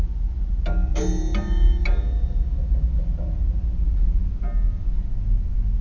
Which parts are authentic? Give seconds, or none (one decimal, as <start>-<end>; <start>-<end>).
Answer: 0.0-5.8